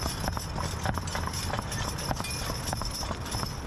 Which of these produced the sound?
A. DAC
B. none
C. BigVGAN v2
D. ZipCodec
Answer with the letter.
B